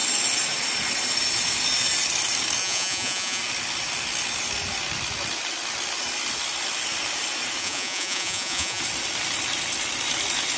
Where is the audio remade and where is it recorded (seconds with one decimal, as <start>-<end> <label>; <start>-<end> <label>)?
0.0-2.6 recorded; 2.6-3.4 remade; 3.4-7.6 recorded; 7.6-8.8 remade; 8.8-10.6 recorded